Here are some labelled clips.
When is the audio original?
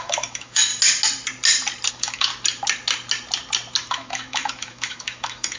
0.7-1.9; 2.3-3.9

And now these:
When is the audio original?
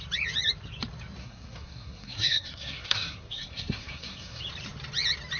0.0-1.2; 4.4-5.4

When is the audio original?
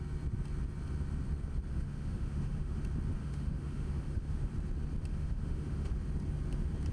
0.0-1.7; 2.8-3.2; 4.5-5.1; 5.9-6.9